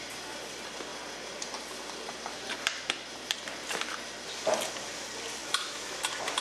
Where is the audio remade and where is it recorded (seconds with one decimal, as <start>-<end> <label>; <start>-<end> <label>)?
0.0-5.4 recorded; 5.4-6.0 remade; 6.0-6.4 recorded